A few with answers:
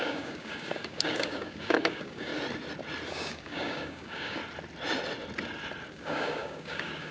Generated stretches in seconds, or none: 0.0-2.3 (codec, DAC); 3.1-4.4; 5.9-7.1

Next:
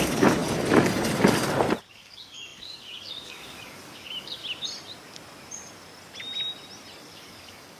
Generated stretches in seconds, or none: 0.0-0.4 (codec, DAC); 1.9-4.4; 7.0-7.8

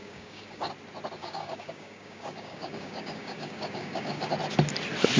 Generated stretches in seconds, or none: 0.0-0.7 (codec, DAC); 1.2-4.3